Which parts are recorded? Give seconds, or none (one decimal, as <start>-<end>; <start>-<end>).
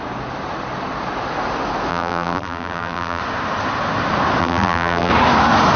0.0-1.9; 3.2-4.4; 5.1-5.8